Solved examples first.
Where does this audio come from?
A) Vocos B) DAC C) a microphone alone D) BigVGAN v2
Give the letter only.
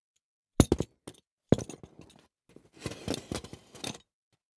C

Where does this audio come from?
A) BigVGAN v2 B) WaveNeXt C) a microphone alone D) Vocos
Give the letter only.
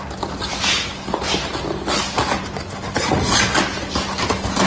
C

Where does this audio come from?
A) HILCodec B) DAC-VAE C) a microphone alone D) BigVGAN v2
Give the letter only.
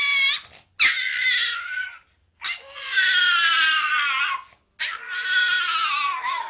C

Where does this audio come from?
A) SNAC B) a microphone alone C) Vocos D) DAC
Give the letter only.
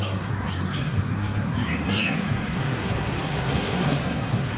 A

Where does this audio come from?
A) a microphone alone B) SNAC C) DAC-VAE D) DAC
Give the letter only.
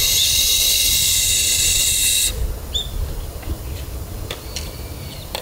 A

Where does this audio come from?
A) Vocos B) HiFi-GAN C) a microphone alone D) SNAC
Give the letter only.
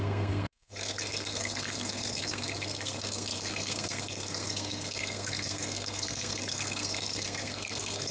D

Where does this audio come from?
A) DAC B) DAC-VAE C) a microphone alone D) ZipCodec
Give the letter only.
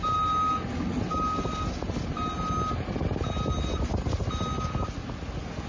C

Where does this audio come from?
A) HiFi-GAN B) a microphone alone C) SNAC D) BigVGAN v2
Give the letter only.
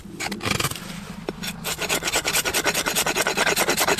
B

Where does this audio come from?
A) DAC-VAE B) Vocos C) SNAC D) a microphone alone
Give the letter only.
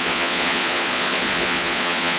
B